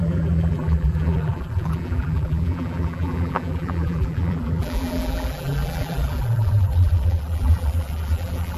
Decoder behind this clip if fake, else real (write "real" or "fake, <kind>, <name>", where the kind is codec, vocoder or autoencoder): fake, vocoder, BigVGAN v2